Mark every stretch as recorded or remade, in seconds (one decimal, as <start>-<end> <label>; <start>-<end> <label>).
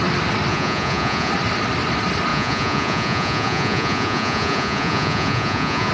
0.0-0.5 recorded; 0.5-1.3 remade; 1.3-2.3 recorded; 2.3-5.9 remade